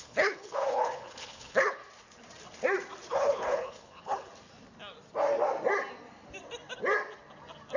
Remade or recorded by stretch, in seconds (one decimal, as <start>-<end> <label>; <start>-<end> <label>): 0.0-1.8 remade; 1.8-3.1 recorded; 3.1-4.3 remade; 4.3-7.8 recorded